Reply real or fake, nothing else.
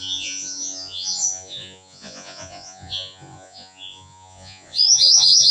fake